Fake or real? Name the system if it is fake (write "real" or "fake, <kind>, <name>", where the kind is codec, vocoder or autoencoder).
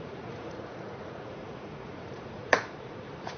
fake, vocoder, Vocos